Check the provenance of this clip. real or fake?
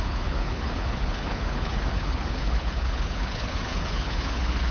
fake